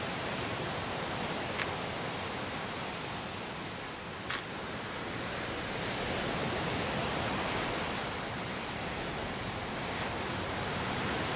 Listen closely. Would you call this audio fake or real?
real